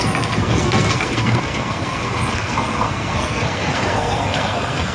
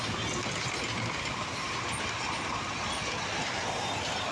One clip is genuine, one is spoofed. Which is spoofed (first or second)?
first